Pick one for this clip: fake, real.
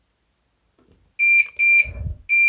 real